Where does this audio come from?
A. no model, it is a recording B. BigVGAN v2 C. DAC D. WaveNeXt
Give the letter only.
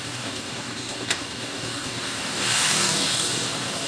C